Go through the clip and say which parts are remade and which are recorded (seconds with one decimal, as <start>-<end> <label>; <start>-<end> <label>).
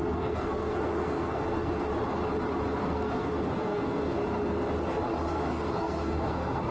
0.0-1.9 remade; 1.9-2.8 recorded; 2.8-4.2 remade; 4.2-5.3 recorded; 5.3-6.7 remade